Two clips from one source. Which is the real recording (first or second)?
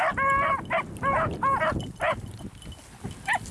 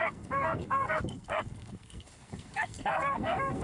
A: first